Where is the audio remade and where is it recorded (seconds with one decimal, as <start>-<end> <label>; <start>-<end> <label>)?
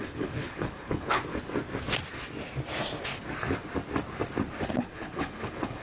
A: 0.0-1.2 remade; 1.2-4.7 recorded; 4.7-5.8 remade